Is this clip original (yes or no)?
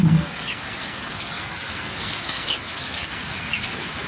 no